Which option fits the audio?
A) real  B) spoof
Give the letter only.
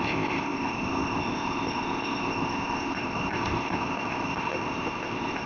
B